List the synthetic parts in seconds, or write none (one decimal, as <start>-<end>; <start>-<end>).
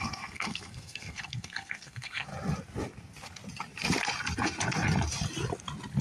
0.0-2.3